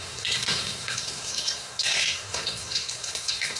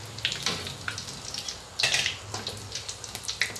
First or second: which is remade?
first